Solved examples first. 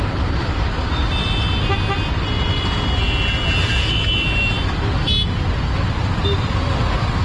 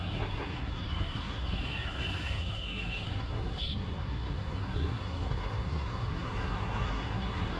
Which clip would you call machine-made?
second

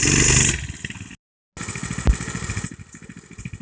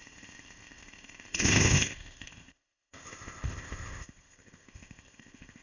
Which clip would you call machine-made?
second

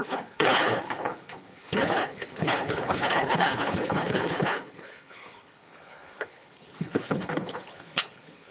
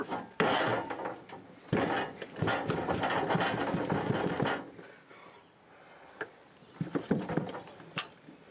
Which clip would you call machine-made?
first